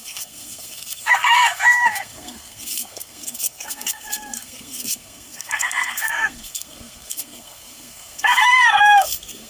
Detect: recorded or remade remade